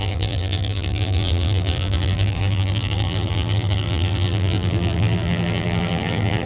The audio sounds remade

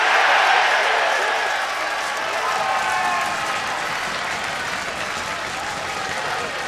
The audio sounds recorded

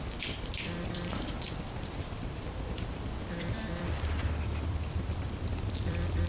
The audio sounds remade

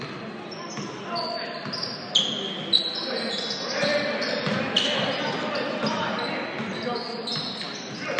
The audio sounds recorded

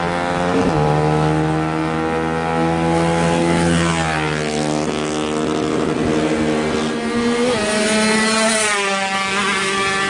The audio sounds recorded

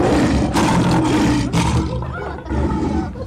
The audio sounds remade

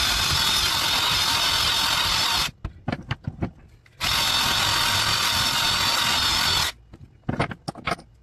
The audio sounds recorded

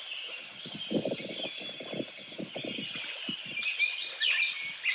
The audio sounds recorded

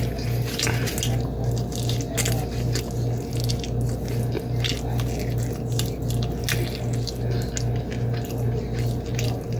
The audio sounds recorded